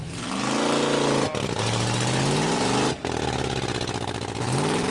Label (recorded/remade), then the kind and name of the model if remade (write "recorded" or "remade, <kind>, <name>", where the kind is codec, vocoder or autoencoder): recorded